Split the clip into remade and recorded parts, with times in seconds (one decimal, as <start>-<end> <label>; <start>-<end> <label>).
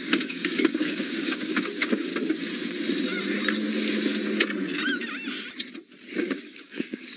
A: 0.0-2.1 remade; 2.1-6.2 recorded; 6.2-7.2 remade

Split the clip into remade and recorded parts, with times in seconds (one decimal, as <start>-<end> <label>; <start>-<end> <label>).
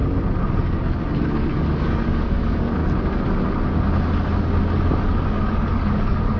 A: 0.0-0.6 recorded; 0.6-2.8 remade; 2.8-5.0 recorded; 5.0-6.4 remade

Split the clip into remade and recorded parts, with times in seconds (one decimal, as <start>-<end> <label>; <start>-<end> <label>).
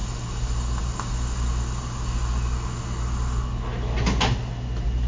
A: 0.0-5.1 recorded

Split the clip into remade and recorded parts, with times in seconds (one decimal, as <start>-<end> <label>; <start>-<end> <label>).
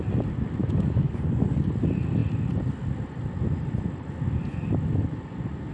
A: 0.0-0.6 recorded; 0.6-1.6 remade; 1.6-5.7 recorded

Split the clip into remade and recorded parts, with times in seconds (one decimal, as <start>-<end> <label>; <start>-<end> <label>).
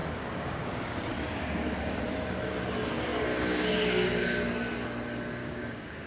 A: 0.0-2.0 remade; 2.0-3.3 recorded; 3.3-4.5 remade; 4.5-5.4 recorded; 5.4-6.1 remade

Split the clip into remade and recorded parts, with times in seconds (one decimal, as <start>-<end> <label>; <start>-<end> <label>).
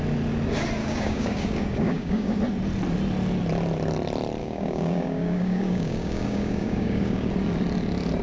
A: 0.0-0.8 recorded; 0.8-2.4 remade; 2.4-4.4 recorded; 4.4-7.3 remade; 7.3-8.2 recorded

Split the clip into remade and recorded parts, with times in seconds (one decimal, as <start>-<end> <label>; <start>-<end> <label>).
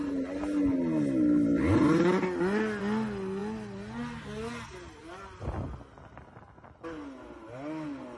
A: 0.0-8.2 recorded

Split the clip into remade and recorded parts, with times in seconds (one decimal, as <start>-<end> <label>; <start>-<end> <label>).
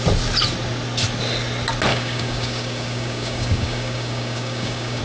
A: 0.0-1.9 recorded; 1.9-5.0 remade